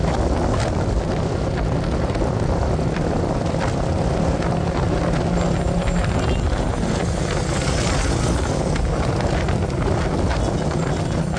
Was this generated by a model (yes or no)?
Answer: no